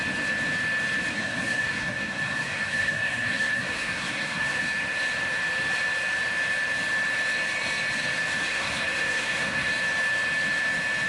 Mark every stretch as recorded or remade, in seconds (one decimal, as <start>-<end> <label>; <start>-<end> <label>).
0.0-1.1 recorded; 1.1-4.6 remade; 4.6-8.4 recorded; 8.4-9.7 remade; 9.7-11.1 recorded